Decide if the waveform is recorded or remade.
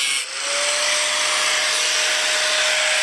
recorded